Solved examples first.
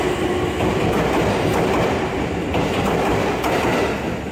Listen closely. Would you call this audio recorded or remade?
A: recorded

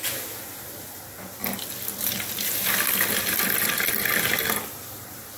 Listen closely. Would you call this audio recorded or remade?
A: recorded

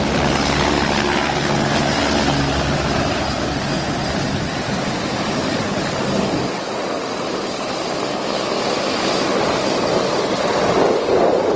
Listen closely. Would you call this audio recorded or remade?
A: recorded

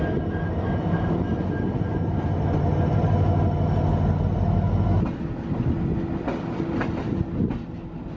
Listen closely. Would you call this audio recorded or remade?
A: recorded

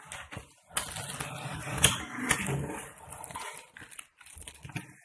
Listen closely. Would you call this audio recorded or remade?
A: recorded